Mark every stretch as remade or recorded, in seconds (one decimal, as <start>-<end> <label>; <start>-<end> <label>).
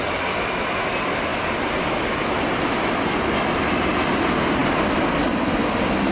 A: 0.0-1.3 recorded; 1.3-3.7 remade; 3.7-6.1 recorded